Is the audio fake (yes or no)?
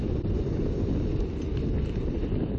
no